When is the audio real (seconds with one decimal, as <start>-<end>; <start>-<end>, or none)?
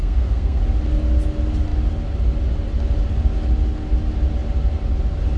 0.6-5.4